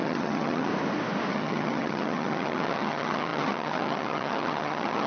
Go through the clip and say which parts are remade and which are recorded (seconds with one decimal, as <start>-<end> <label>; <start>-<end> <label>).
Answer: 0.0-0.7 remade; 0.7-1.3 recorded; 1.3-5.1 remade